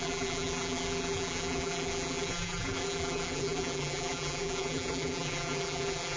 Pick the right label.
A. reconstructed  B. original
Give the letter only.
A